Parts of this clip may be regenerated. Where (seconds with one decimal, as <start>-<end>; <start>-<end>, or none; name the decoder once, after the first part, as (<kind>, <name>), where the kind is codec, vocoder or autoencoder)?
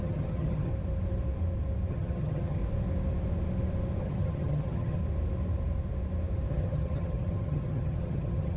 0.0-0.7 (vocoder, HiFi-GAN); 1.9-2.6; 4.0-5.0; 6.5-8.6